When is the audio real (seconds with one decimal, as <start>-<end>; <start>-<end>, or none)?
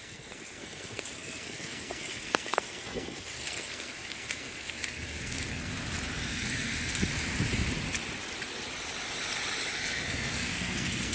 5.7-6.3; 7.1-9.7